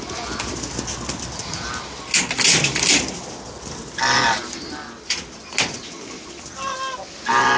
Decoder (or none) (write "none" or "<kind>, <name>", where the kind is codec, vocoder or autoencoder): none